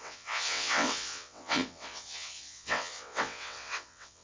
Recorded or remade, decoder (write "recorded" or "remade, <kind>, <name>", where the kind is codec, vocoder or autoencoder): remade, vocoder, WaveNeXt